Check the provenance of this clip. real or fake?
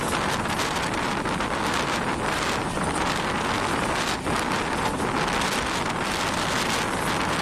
real